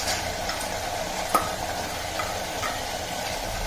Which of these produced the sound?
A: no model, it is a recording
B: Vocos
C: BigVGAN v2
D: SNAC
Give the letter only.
C